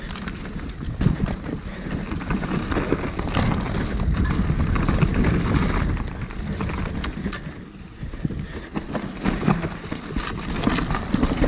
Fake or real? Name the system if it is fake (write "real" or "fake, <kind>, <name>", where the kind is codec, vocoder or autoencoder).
real